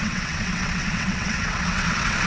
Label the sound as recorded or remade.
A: remade